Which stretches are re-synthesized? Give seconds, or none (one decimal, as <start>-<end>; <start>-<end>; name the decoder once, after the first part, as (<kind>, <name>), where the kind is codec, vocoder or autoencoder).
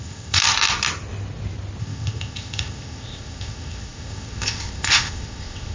0.0-0.4 (codec, ZipCodec); 1.8-5.7